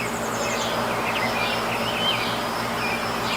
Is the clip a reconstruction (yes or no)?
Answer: no